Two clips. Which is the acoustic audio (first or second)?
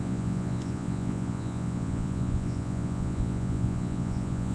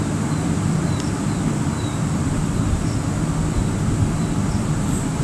second